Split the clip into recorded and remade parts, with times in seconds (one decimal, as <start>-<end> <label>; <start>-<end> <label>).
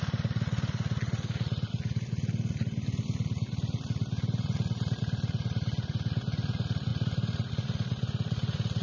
0.0-8.8 recorded